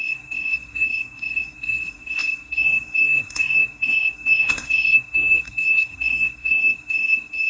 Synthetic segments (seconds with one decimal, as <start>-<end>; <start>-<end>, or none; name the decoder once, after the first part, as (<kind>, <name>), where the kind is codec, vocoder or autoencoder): 0.0-7.5 (codec, SNAC)